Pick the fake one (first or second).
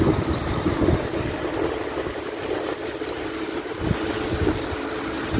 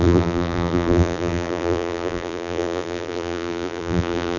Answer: second